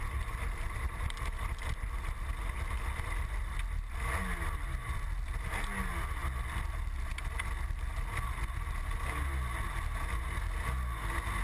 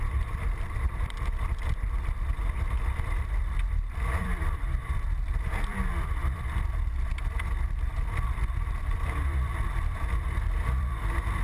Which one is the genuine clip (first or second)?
first